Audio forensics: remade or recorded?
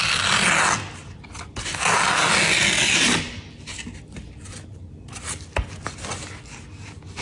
recorded